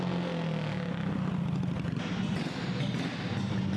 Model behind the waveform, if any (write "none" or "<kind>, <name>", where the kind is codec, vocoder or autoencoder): none